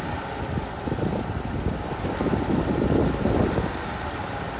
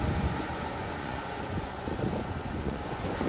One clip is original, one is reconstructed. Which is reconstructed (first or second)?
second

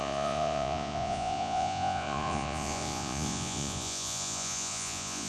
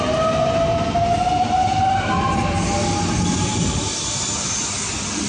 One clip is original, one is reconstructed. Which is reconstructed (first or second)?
first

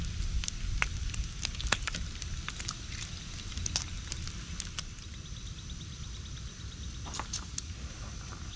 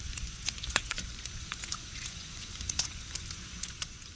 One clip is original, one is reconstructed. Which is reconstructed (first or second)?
second